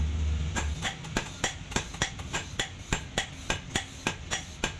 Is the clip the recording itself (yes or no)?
yes